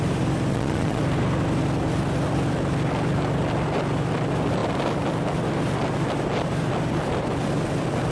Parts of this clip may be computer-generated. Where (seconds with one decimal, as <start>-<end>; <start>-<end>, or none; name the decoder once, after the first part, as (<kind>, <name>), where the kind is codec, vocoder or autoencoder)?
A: 0.5-1.0 (vocoder, Vocos)